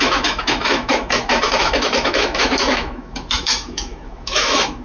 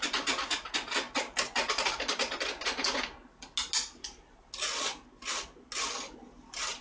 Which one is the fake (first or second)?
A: first